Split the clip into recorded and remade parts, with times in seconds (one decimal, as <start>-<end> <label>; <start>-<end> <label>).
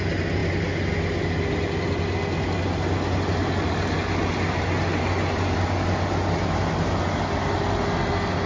0.0-8.5 recorded